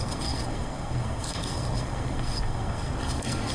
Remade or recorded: remade